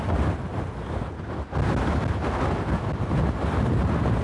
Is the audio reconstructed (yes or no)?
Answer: no